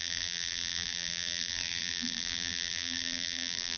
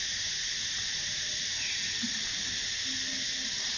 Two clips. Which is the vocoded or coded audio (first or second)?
first